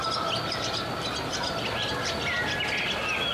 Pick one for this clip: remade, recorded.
recorded